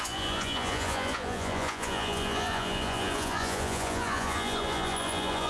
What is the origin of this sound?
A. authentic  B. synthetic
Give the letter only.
B